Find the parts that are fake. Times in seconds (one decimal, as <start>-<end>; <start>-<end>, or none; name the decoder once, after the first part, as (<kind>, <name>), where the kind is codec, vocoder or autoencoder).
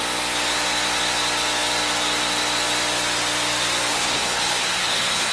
3.9-5.3 (codec, HILCodec)